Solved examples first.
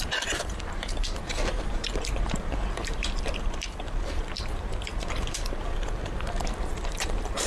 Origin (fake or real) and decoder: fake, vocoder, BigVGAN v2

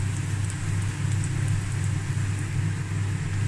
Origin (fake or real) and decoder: real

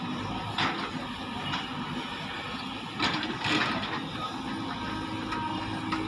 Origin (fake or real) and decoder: real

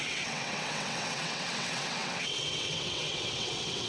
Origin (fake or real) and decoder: fake, vocoder, WaveNeXt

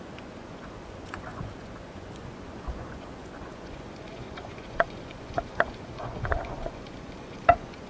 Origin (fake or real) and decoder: fake, vocoder, Vocos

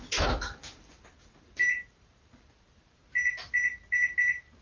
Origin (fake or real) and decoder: real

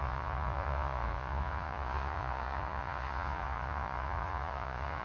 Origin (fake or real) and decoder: fake, vocoder, Vocos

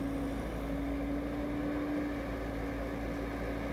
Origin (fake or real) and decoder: real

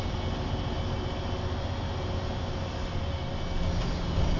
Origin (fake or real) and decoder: real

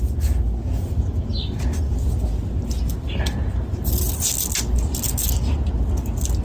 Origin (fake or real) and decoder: real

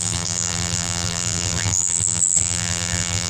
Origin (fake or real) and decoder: fake, vocoder, BigVGAN v2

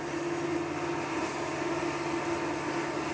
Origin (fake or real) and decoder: real